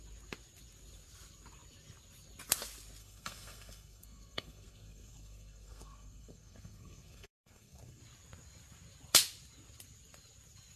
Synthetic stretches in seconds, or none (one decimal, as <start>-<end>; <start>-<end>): 3.0-8.0